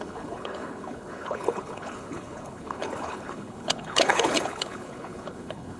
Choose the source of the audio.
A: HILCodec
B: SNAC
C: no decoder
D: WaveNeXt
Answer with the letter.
A